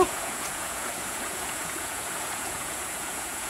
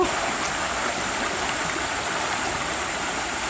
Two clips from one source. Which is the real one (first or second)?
second